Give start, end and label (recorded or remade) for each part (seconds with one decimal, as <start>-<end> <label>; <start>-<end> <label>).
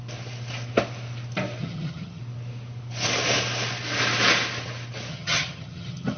0.0-1.6 recorded; 1.6-2.2 remade; 2.2-5.1 recorded; 5.1-6.2 remade